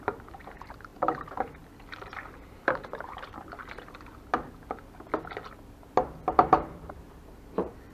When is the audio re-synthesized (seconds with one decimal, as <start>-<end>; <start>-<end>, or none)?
0.0-3.6; 6.3-7.9

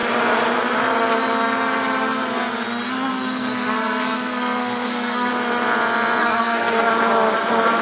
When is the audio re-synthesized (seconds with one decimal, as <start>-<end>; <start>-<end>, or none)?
3.1-5.3; 6.2-6.9

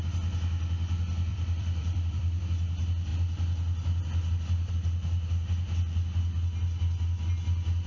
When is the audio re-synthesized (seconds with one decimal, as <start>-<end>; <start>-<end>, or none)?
1.3-2.4

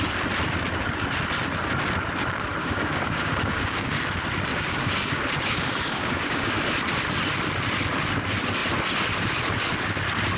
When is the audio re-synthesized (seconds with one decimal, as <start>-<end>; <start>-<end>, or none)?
2.6-4.0; 4.5-6.6

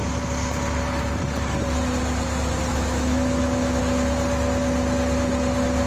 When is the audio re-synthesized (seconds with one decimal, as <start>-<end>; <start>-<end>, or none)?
2.7-3.8

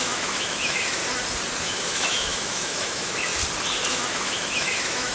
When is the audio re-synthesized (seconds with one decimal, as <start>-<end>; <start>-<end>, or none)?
0.0-1.0; 1.6-3.3; 3.9-5.1

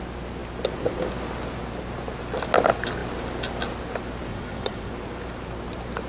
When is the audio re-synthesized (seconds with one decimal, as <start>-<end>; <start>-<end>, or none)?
4.3-4.9